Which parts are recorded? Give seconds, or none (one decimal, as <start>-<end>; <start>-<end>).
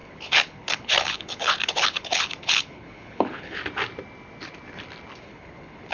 3.6-5.2